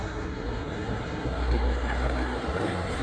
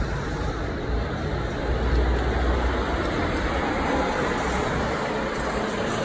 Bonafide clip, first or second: second